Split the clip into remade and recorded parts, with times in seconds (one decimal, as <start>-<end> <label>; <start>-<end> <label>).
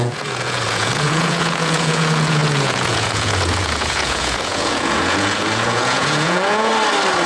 0.0-6.7 remade; 6.7-7.3 recorded